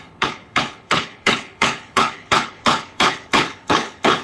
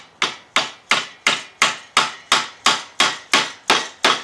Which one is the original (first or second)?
second